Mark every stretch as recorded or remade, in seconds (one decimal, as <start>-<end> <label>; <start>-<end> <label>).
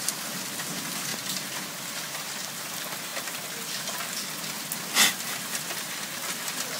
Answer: 0.0-6.8 recorded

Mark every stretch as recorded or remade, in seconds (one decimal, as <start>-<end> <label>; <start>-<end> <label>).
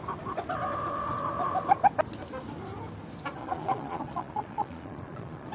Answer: 0.0-3.4 recorded; 3.4-5.5 remade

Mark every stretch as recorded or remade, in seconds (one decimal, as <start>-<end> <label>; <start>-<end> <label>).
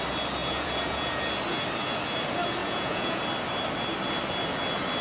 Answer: 0.0-0.4 recorded; 0.4-1.2 remade; 1.2-2.6 recorded; 2.6-3.2 remade; 3.2-5.0 recorded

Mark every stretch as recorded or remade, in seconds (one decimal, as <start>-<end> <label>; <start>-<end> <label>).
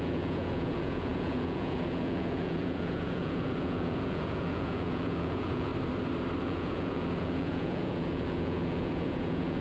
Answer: 0.0-5.7 remade; 5.7-6.4 recorded; 6.4-9.6 remade